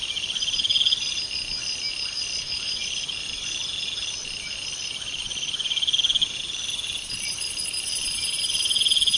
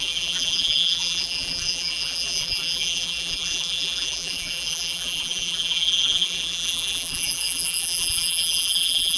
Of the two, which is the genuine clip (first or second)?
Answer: first